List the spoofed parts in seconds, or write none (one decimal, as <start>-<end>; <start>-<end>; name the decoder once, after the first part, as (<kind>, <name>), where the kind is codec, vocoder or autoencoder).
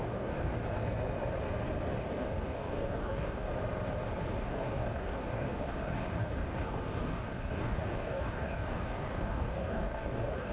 0.0-0.5 (codec, DAC); 2.0-3.5; 4.3-10.5